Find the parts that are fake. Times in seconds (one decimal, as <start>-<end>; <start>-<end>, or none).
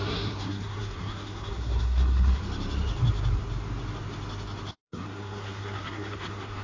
0.0-2.4; 4.7-6.6